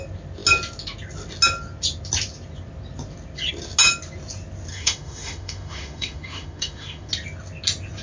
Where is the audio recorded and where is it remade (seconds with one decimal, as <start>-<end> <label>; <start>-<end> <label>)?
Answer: 0.0-4.7 recorded; 4.7-7.1 remade; 7.1-8.0 recorded